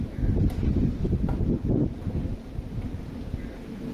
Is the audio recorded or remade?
recorded